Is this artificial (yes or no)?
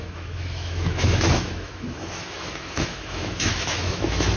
yes